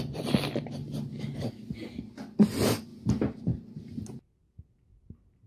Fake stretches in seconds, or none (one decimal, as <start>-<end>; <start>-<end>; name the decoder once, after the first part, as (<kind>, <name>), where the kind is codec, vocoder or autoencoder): 1.1-2.0 (codec, DAC)